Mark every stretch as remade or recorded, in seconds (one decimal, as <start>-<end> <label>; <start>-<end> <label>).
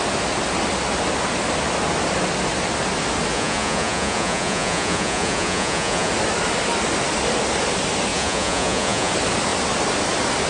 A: 0.0-3.3 recorded; 3.3-6.1 remade; 6.1-8.1 recorded; 8.1-9.1 remade; 9.1-10.5 recorded